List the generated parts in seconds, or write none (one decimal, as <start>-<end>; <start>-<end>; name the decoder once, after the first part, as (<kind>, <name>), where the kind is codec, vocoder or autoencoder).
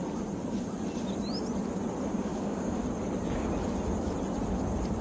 2.2-2.8 (codec, DAC)